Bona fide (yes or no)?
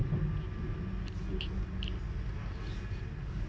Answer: yes